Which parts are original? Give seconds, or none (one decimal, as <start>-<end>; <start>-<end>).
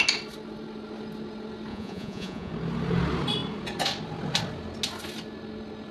0.0-1.7; 2.5-5.9